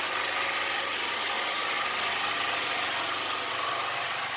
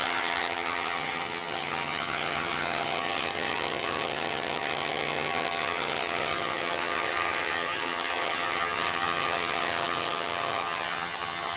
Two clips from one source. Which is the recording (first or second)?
first